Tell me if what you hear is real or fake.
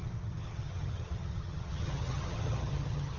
fake